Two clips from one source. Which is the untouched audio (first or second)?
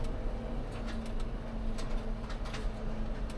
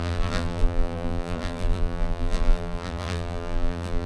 first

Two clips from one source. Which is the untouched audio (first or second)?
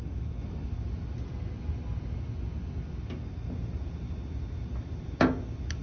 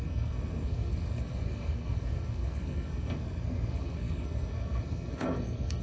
first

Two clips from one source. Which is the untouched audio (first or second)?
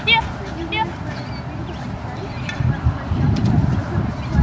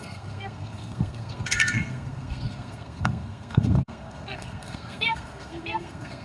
first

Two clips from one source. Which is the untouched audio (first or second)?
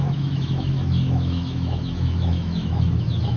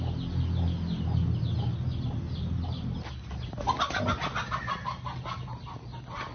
second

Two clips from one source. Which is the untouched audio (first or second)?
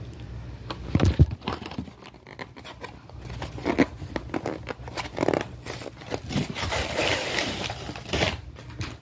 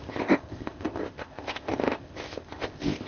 first